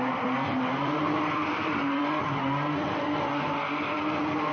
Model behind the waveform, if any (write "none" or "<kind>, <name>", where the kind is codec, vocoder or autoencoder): vocoder, BigVGAN v2